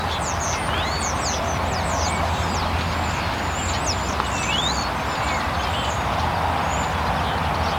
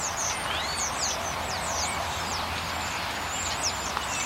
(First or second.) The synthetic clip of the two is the second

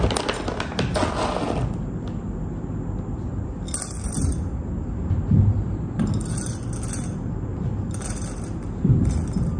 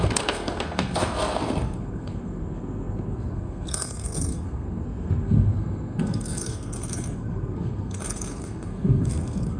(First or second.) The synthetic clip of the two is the second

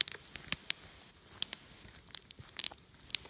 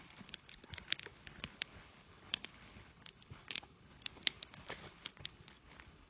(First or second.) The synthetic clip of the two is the second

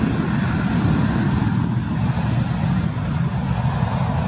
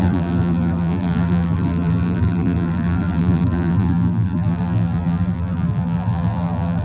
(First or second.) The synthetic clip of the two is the second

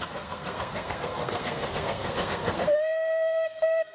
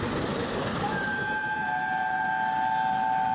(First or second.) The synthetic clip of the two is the first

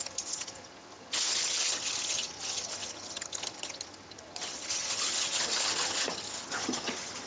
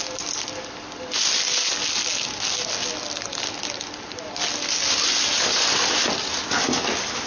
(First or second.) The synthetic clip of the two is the first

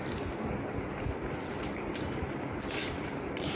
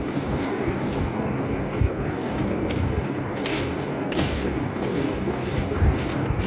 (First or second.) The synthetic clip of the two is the second